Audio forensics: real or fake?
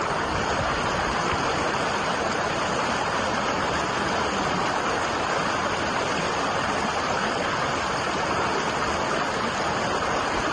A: real